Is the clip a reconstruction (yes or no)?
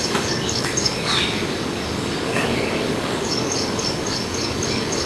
yes